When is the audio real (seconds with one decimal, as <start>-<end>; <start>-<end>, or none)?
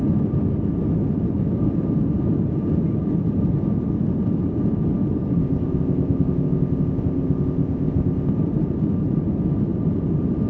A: 0.0-5.4; 8.3-10.5